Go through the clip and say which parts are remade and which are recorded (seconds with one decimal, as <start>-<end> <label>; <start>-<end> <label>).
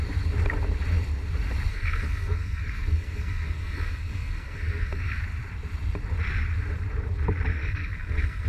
0.0-1.7 recorded; 1.7-5.2 remade; 5.2-7.5 recorded; 7.5-8.5 remade